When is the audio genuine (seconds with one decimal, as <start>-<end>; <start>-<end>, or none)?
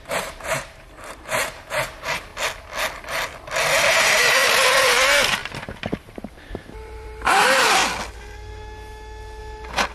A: 2.3-4.3; 5.4-6.0; 7.8-9.4